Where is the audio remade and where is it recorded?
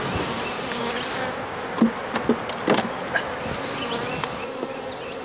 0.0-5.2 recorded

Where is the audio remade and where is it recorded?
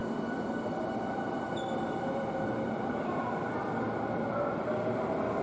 0.0-3.2 remade; 3.2-5.4 recorded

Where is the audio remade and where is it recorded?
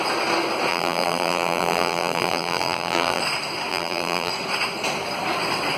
0.0-0.7 recorded; 0.7-3.2 remade; 3.2-3.7 recorded; 3.7-4.3 remade; 4.3-5.8 recorded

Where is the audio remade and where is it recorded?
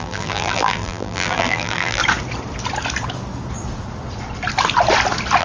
0.0-2.0 remade; 2.0-5.4 recorded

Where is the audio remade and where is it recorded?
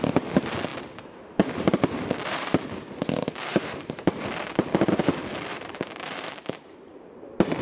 0.0-0.7 recorded; 0.7-1.6 remade; 1.6-2.2 recorded; 2.2-3.0 remade; 3.0-3.5 recorded; 3.5-4.3 remade; 4.3-5.5 recorded; 5.5-6.6 remade; 6.6-7.6 recorded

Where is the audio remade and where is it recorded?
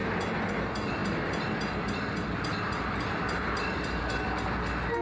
0.0-1.0 recorded; 1.0-4.0 remade; 4.0-5.0 recorded